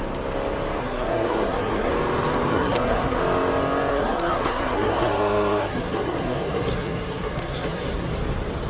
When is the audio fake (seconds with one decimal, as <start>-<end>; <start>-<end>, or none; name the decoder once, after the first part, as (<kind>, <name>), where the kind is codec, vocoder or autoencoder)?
0.8-1.9 (codec, SNAC); 2.5-3.2; 3.9-8.1